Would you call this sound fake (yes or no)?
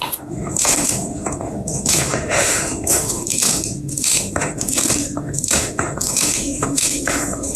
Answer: yes